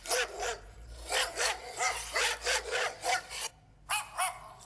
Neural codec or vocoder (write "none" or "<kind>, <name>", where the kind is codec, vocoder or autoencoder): none